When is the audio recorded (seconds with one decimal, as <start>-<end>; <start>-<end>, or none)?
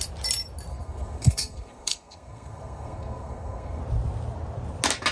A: 0.0-0.7; 3.8-5.1